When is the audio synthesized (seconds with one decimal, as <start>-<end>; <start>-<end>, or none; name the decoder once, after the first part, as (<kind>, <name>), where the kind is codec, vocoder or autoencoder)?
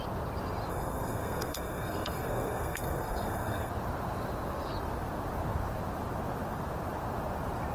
0.7-3.7 (codec, SNAC)